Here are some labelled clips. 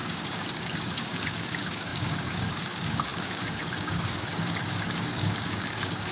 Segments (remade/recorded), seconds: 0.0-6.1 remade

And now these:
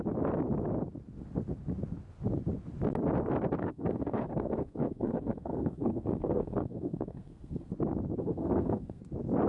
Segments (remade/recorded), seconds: 0.0-3.6 recorded; 3.6-7.7 remade; 7.7-8.2 recorded; 8.2-9.0 remade; 9.0-9.5 recorded

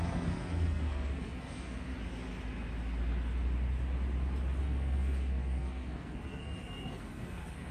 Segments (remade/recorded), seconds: 0.0-1.9 remade; 1.9-4.6 recorded; 4.6-7.7 remade